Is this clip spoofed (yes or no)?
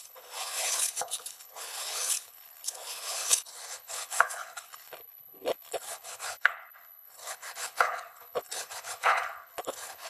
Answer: yes